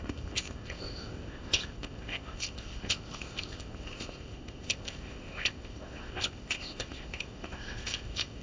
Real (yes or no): no